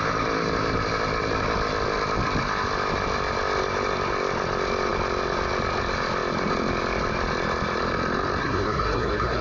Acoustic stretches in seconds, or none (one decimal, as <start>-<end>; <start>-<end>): 0.0-8.4